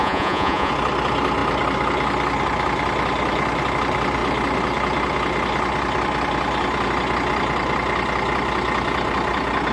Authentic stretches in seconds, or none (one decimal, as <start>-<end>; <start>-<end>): 0.7-9.7